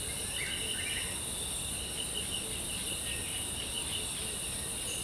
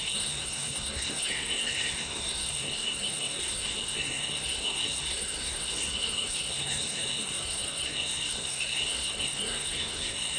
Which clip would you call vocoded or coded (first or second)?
second